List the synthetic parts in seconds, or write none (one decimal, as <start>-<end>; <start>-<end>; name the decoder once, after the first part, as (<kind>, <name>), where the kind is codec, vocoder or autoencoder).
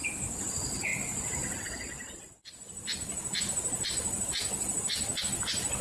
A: none